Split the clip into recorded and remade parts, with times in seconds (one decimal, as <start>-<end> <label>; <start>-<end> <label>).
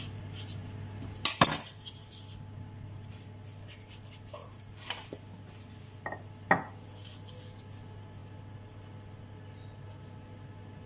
0.0-10.9 recorded